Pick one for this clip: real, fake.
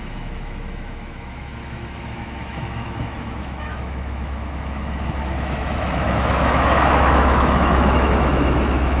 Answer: fake